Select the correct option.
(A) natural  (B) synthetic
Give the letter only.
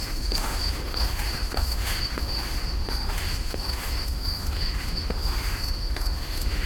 B